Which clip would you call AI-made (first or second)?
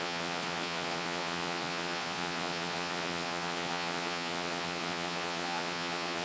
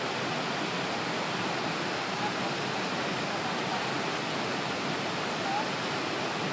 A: first